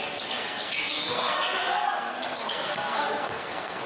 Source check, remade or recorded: remade